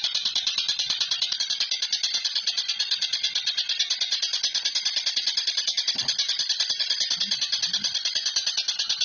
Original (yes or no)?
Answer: yes